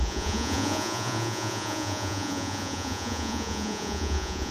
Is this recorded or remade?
remade